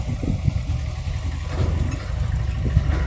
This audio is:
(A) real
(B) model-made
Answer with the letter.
A